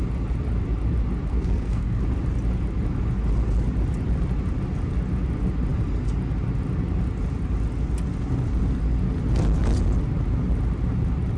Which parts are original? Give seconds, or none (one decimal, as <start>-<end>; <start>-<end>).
0.0-1.3; 2.0-11.4